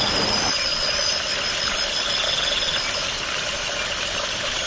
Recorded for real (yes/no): yes